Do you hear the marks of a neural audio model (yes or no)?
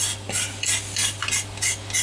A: no